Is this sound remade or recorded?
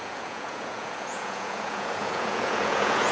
remade